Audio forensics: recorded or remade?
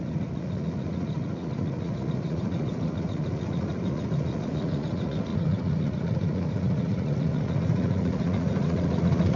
remade